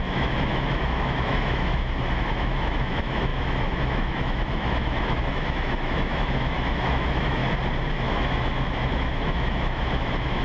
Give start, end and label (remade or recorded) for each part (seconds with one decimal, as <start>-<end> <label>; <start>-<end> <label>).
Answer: 0.0-7.4 remade; 7.4-7.9 recorded; 7.9-10.4 remade